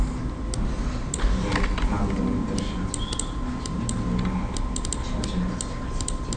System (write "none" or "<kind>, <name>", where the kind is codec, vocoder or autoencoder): none